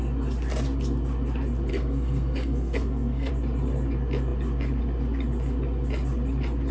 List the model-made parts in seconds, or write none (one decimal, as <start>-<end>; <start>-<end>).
1.7-3.3